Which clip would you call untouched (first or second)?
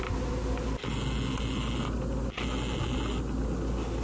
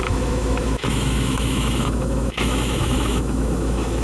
first